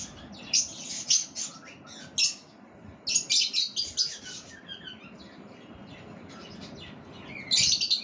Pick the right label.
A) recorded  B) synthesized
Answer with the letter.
A